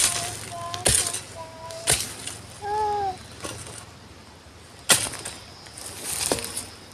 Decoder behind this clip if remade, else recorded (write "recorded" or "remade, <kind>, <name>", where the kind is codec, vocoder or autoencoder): recorded